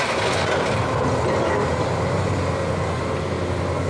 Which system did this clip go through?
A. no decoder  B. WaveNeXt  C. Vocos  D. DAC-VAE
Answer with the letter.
A